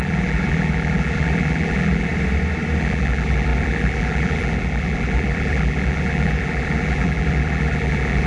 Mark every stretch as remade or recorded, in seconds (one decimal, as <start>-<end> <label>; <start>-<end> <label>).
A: 0.0-2.1 remade; 2.1-2.8 recorded; 2.8-8.3 remade